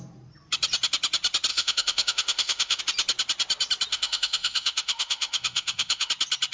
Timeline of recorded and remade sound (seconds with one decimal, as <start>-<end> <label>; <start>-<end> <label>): 0.0-1.5 recorded; 1.5-2.8 remade; 2.8-3.9 recorded; 3.9-6.1 remade; 6.1-6.5 recorded